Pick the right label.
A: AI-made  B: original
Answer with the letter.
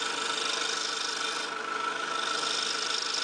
B